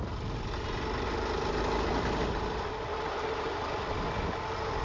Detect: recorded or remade recorded